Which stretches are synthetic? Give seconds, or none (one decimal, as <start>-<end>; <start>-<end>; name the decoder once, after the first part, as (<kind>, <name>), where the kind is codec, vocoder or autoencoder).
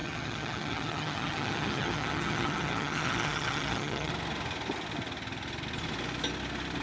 0.0-4.1 (vocoder, HiFi-GAN)